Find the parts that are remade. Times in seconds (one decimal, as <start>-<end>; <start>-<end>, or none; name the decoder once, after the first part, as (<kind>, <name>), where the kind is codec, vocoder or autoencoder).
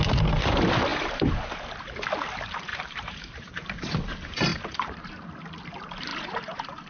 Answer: 0.9-1.5 (vocoder, BigVGAN v2); 2.7-3.5; 4.5-5.1; 6.1-6.9